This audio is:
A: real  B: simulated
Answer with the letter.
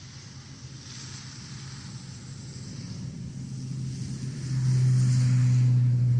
A